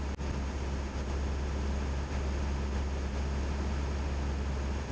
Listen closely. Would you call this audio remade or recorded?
recorded